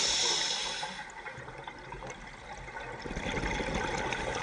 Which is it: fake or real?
real